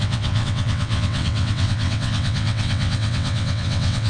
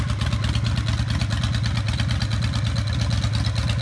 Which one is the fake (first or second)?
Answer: first